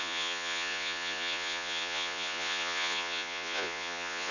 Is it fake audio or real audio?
fake